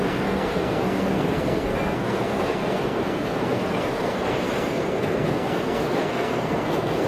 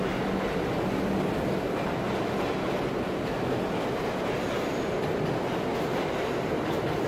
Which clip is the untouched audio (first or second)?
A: second